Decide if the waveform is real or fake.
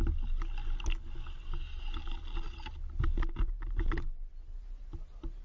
real